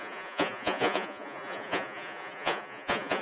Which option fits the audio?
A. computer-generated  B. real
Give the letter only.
A